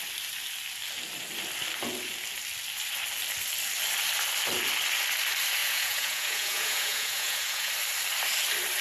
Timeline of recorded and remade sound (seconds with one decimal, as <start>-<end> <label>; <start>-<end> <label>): 0.0-5.6 recorded; 5.6-7.7 remade; 7.7-8.8 recorded